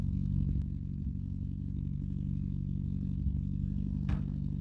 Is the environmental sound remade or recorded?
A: remade